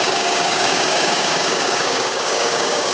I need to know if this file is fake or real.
fake